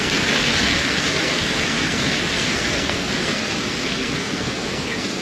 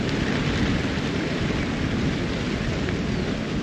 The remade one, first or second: first